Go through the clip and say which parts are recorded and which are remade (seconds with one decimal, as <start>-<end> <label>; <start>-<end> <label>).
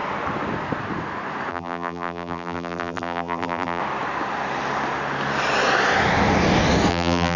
0.0-1.5 recorded; 1.5-3.8 remade; 3.8-6.9 recorded; 6.9-7.4 remade